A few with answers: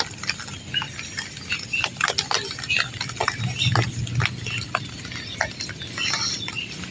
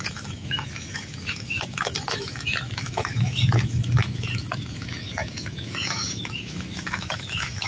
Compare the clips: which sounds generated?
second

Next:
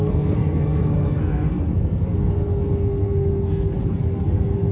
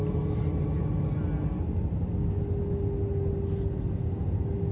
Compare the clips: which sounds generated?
first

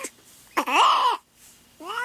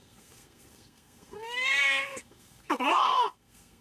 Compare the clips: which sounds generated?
second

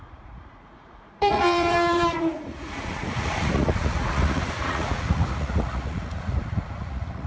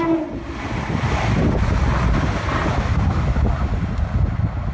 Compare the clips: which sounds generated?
first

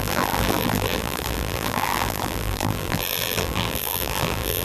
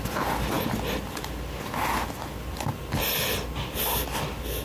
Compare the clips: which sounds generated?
first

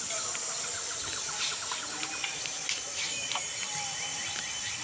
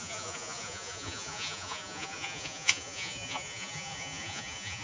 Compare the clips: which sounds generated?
second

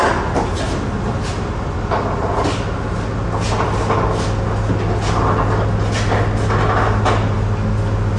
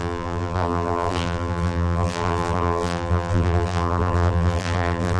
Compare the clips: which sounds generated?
second